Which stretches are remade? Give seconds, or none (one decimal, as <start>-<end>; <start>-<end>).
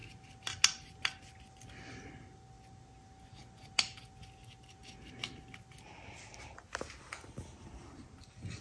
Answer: none